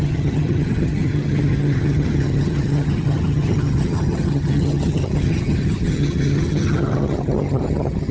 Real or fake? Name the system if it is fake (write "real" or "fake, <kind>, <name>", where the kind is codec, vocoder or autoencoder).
fake, vocoder, HiFi-GAN